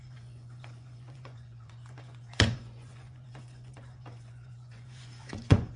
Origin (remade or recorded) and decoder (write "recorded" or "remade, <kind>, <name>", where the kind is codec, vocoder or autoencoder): remade, vocoder, Vocos